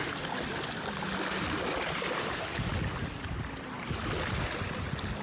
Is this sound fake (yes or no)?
no